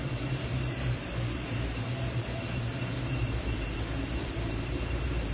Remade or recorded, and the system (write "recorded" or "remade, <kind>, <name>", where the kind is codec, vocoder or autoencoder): remade, vocoder, BigVGAN v2